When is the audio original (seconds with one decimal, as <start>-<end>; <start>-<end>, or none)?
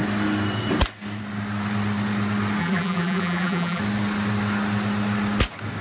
0.0-2.6; 3.8-5.8